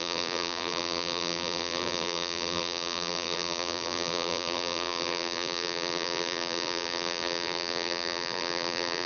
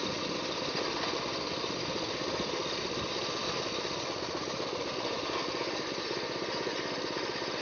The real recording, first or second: second